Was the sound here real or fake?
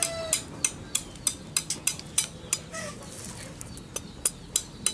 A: real